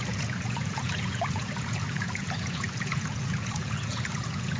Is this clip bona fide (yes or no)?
no